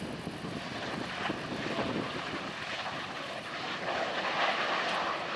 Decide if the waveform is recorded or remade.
recorded